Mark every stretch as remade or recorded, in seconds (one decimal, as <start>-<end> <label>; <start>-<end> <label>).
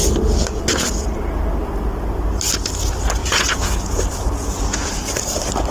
0.0-3.2 recorded; 3.2-5.0 remade; 5.0-5.7 recorded